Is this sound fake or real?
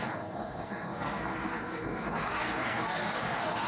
fake